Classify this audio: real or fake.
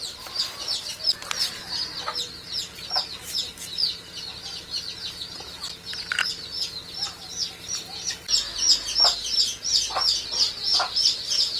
real